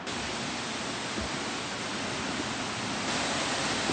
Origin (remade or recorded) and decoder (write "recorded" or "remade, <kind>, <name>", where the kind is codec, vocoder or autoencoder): recorded